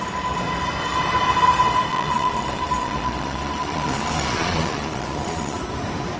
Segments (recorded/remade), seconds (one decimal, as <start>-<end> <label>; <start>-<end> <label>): 0.0-1.9 recorded; 1.9-5.6 remade; 5.6-6.2 recorded